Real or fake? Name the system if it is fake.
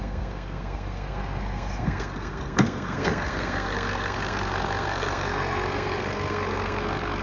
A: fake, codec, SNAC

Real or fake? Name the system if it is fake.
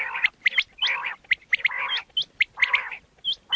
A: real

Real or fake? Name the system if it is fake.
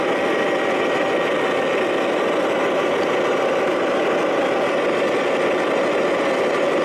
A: real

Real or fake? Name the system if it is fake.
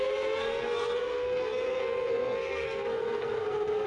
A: fake, codec, SNAC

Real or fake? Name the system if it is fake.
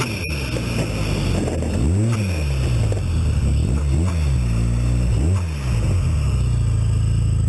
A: real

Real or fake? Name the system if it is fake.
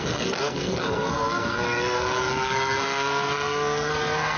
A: fake, codec, SNAC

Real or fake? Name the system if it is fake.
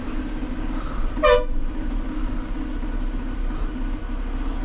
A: real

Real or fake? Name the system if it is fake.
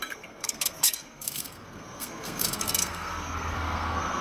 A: fake, codec, SNAC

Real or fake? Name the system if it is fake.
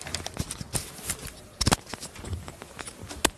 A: real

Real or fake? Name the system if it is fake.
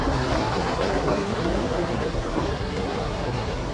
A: fake, codec, SNAC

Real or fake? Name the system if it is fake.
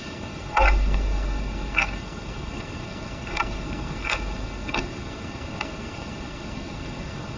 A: fake, codec, SNAC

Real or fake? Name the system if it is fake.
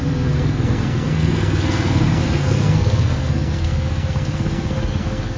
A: fake, codec, SNAC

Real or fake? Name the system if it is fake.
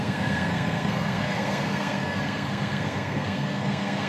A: fake, codec, SNAC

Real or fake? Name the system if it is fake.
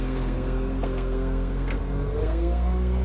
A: fake, codec, SNAC